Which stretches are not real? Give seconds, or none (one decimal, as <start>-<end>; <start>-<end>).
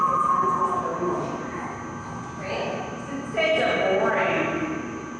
none